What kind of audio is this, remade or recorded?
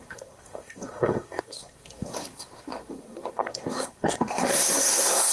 remade